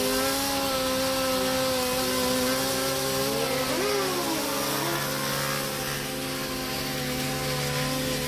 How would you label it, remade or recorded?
recorded